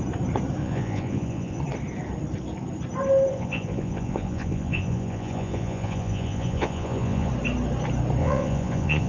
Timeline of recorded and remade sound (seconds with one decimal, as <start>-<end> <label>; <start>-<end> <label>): 0.0-0.6 recorded; 0.6-1.6 remade; 1.6-3.3 recorded; 3.3-7.3 remade; 7.3-8.2 recorded; 8.2-9.1 remade